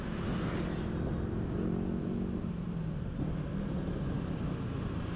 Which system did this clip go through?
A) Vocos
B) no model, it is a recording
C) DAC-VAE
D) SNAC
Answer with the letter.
B